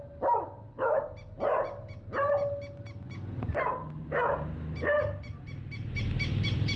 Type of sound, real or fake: real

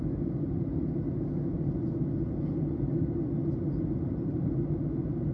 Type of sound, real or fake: real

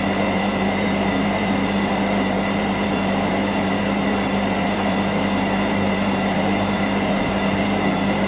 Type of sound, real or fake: fake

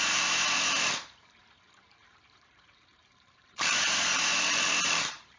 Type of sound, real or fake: fake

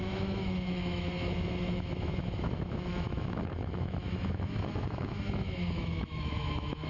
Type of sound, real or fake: fake